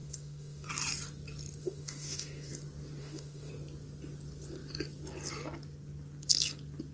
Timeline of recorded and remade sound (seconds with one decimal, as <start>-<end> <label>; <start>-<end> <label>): 0.0-0.7 remade; 0.7-1.6 recorded; 1.6-2.5 remade; 2.5-3.0 recorded; 3.0-3.5 remade; 3.5-6.9 recorded